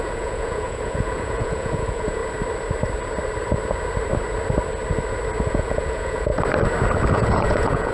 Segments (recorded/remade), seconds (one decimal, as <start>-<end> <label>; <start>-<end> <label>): 0.0-2.2 remade; 2.2-5.5 recorded; 5.5-6.3 remade; 6.3-7.1 recorded; 7.1-7.9 remade